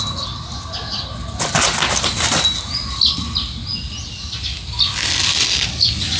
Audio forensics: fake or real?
real